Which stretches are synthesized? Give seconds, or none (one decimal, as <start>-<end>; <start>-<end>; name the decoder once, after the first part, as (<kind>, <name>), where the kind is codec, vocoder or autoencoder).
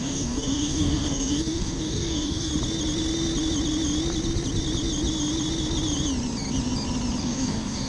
0.0-2.5 (codec, DAC); 7.2-7.9